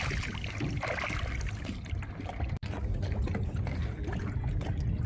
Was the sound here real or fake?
real